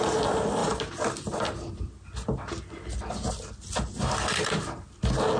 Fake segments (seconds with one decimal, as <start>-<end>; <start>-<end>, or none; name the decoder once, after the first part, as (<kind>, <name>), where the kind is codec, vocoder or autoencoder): none